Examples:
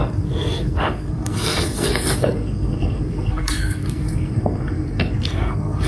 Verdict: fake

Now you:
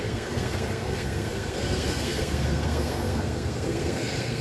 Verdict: fake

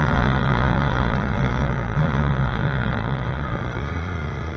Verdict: fake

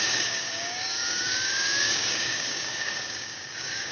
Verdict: fake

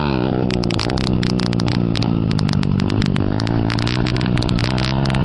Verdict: real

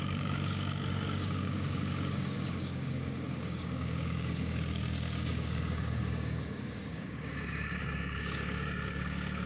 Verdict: fake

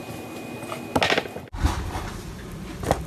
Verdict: real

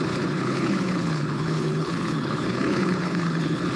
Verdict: fake